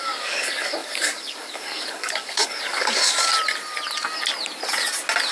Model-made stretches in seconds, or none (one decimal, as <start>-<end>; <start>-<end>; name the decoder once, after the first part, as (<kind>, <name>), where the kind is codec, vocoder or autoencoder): 0.0-3.3 (codec, DAC)